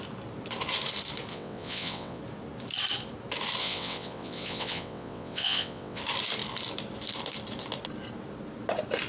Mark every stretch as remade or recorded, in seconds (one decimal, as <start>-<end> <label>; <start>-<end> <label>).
0.0-1.3 recorded; 1.3-2.2 remade; 2.2-3.6 recorded; 3.6-6.0 remade; 6.0-9.1 recorded